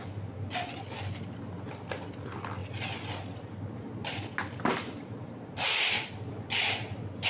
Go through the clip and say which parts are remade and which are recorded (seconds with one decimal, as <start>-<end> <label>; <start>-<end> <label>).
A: 0.0-7.3 recorded